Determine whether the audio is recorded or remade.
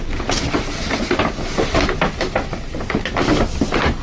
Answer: recorded